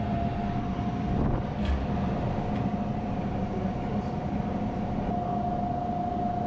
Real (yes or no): yes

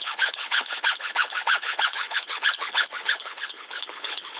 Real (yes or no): no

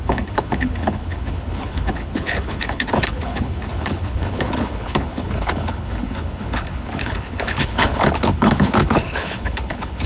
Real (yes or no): no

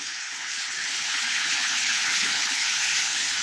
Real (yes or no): no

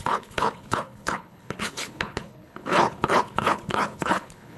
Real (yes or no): no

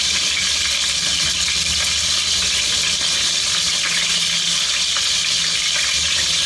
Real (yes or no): yes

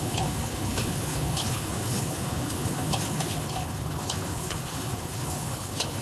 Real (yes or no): no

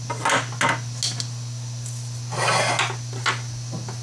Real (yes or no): yes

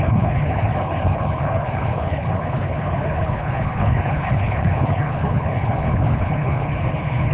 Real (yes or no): no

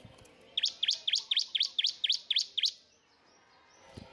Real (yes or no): yes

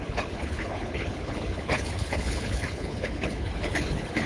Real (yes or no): no